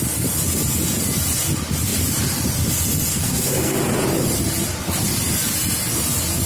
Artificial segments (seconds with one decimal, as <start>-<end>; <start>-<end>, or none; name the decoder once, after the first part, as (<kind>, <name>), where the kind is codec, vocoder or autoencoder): 3.1-3.8 (codec, SNAC)